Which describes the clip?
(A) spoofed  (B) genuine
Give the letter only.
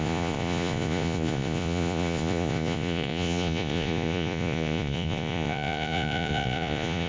A